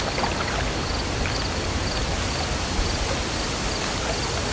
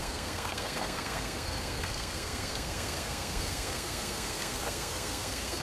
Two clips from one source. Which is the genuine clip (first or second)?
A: first